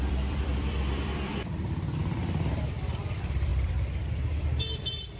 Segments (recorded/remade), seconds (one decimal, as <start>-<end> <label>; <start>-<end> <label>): 0.0-5.2 remade